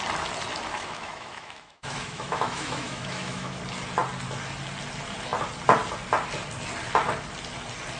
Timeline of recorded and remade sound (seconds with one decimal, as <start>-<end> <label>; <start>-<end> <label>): 0.0-0.7 recorded; 0.7-3.6 remade; 3.6-8.0 recorded